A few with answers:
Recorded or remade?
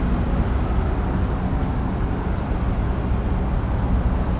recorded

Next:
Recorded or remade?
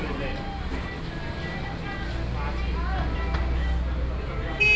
recorded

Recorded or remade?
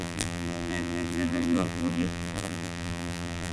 remade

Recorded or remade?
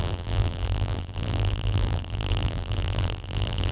remade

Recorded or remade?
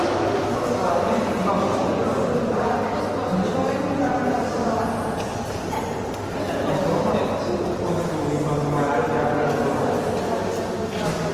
recorded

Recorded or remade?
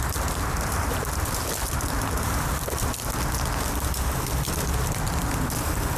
recorded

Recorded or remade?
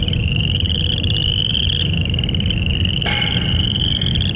remade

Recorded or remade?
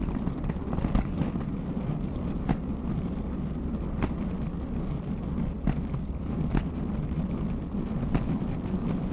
remade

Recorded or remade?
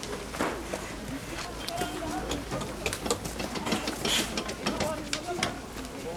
recorded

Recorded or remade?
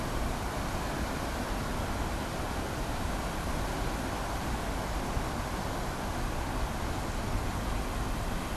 recorded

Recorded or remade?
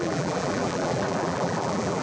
remade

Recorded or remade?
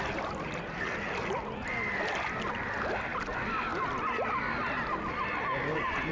recorded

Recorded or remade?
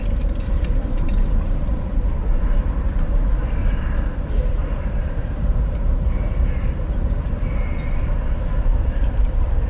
remade